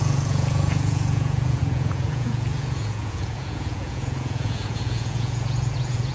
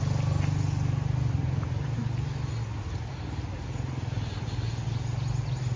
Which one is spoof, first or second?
first